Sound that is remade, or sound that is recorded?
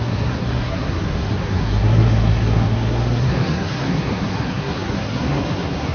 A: remade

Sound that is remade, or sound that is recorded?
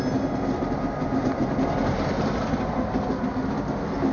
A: recorded